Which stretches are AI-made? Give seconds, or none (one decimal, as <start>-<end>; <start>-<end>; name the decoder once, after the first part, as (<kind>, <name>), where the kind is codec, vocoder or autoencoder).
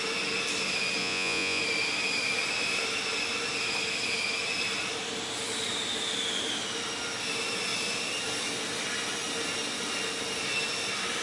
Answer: 1.0-1.6 (vocoder, Vocos)